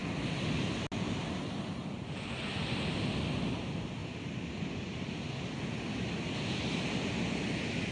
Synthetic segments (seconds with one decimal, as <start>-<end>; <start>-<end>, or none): none